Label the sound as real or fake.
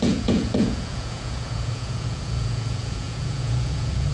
fake